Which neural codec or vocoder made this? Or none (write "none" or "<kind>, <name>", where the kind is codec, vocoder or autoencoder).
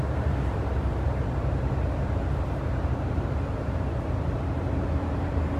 vocoder, BigVGAN v2